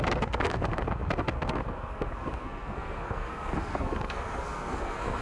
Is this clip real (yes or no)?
no